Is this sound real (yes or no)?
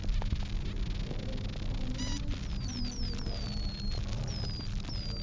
yes